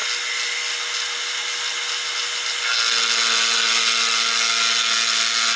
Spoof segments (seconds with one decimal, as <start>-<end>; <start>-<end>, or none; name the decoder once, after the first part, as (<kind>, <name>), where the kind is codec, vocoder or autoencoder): none